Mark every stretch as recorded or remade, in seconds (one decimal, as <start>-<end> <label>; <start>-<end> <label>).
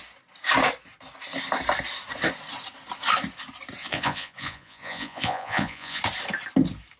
0.0-3.8 recorded; 3.8-6.0 remade; 6.0-7.0 recorded